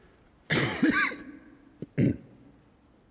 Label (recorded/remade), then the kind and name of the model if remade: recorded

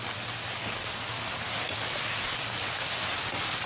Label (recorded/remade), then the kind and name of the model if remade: recorded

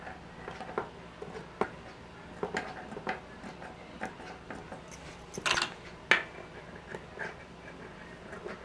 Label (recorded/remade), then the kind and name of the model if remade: recorded